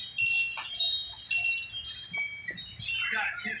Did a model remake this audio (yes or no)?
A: no